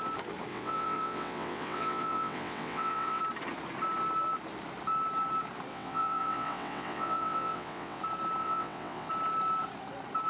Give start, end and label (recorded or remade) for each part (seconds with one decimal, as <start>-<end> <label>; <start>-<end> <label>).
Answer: 0.0-0.5 recorded; 0.5-3.2 remade; 3.2-5.7 recorded; 5.7-8.0 remade; 8.0-8.4 recorded; 8.4-9.1 remade; 9.1-10.3 recorded